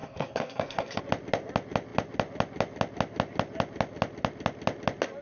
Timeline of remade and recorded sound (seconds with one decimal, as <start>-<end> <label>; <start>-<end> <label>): 0.0-1.0 remade; 1.0-5.2 recorded